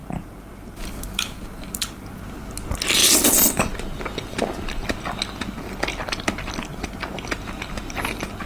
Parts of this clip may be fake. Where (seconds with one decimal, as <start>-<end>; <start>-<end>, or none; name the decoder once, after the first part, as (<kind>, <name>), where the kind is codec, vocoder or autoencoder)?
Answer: 0.0-1.0 (vocoder, BigVGAN v2)